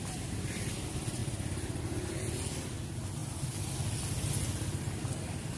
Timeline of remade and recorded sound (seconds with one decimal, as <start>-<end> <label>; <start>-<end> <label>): 0.0-5.6 recorded